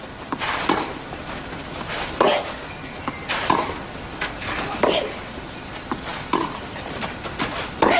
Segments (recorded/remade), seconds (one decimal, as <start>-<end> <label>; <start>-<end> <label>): 0.0-8.0 recorded